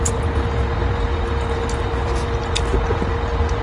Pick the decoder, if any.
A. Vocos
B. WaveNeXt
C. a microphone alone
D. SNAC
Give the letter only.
C